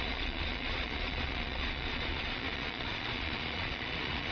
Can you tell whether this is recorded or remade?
remade